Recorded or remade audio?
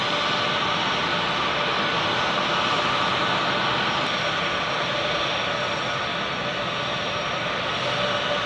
recorded